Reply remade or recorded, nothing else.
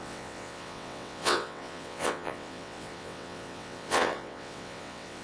remade